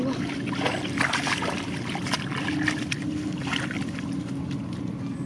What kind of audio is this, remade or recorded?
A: recorded